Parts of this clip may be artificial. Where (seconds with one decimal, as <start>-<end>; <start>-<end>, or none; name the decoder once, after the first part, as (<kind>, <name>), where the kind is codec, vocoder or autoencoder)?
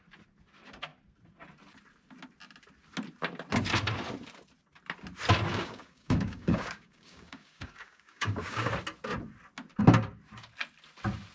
5.5-8.7 (codec, DAC)